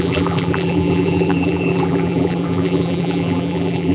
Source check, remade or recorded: remade